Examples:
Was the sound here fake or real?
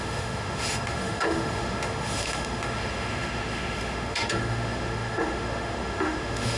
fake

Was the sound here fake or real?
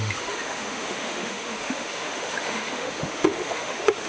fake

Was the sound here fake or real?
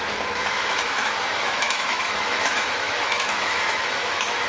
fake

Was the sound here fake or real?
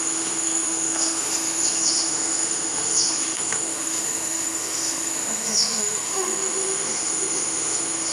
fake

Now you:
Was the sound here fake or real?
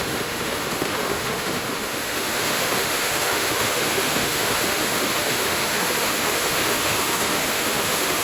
fake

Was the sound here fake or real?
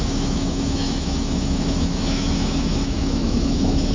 fake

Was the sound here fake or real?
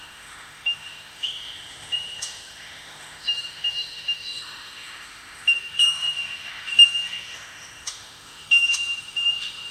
fake